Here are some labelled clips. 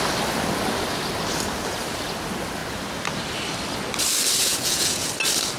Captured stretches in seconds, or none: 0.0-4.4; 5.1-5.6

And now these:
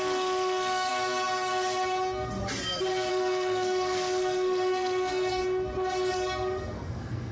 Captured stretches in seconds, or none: 0.9-3.1; 5.4-6.1

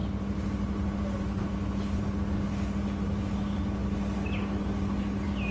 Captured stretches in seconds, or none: 0.0-5.5

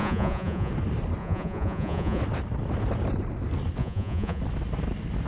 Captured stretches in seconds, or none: 0.7-1.2; 2.2-3.8; 4.4-5.3